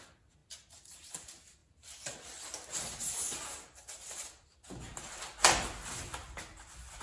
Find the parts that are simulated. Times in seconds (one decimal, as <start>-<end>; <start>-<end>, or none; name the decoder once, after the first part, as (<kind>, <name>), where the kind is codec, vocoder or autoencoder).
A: none